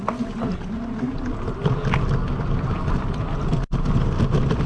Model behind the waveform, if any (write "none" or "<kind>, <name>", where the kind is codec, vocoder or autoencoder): none